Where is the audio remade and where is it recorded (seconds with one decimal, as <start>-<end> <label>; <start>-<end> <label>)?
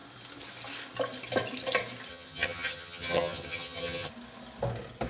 0.0-2.1 recorded; 2.1-4.1 remade; 4.1-5.1 recorded